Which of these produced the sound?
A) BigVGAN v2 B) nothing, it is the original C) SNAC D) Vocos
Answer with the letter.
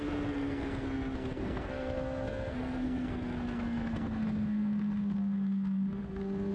C